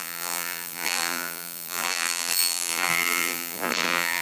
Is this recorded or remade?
remade